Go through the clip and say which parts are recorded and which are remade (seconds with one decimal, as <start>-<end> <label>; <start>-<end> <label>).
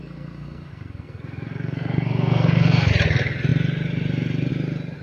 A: 0.0-2.9 remade; 2.9-5.0 recorded